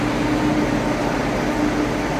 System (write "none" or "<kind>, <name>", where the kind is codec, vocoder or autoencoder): none